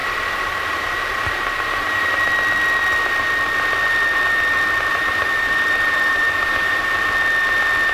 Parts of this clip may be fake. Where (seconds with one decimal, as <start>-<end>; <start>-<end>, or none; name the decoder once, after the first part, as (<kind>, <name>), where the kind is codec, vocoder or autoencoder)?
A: 0.0-2.3 (vocoder, BigVGAN v2); 4.9-6.8